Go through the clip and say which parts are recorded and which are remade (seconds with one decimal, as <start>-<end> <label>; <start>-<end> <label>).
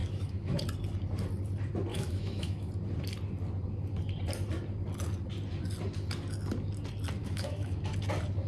0.0-0.6 remade; 0.6-1.9 recorded; 1.9-2.7 remade; 2.7-7.2 recorded; 7.2-7.8 remade; 7.8-8.5 recorded